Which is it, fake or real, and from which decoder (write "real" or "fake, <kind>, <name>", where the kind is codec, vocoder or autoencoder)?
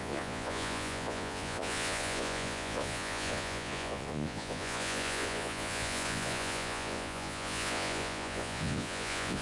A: fake, vocoder, Vocos